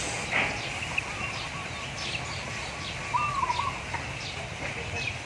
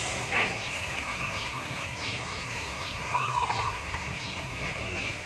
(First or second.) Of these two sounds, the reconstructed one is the second